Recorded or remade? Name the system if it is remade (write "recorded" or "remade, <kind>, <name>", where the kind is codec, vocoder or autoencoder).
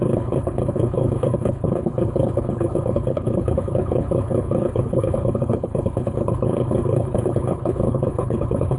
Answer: remade, codec, HILCodec